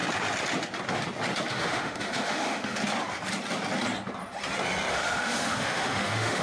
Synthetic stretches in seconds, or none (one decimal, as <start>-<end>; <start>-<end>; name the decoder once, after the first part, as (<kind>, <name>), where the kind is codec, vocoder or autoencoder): 1.5-2.8 (autoencoder, DAC-VAE); 4.9-6.4